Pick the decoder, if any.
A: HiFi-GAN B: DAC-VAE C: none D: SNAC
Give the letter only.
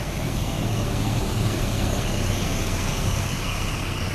D